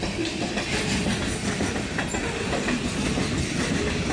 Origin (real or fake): real